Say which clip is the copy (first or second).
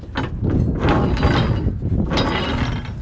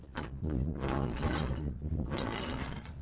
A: second